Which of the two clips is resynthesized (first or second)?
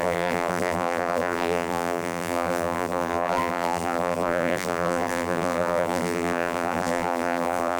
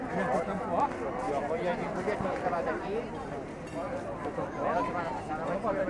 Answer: first